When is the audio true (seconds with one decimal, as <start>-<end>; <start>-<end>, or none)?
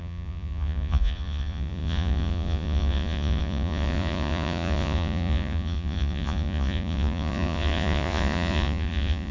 none